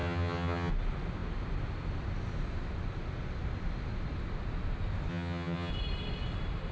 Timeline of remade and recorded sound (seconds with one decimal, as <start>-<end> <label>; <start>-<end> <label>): 0.0-0.7 remade; 0.7-5.1 recorded; 5.1-5.7 remade; 5.7-6.7 recorded